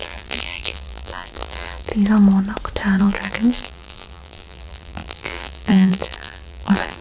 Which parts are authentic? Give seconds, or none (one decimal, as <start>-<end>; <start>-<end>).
1.9-3.0